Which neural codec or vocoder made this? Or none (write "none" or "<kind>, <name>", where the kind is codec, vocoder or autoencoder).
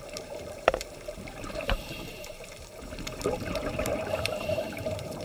vocoder, BigVGAN v2